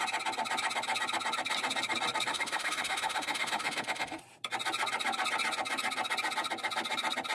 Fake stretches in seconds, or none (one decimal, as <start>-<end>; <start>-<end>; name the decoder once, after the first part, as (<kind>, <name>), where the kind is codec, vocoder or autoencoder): 2.3-4.2 (autoencoder, DAC-VAE)